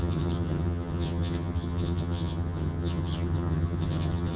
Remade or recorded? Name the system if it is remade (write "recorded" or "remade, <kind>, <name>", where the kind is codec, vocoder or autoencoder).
remade, vocoder, HiFi-GAN